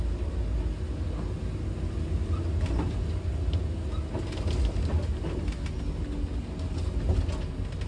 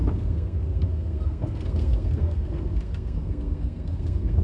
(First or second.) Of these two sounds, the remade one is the second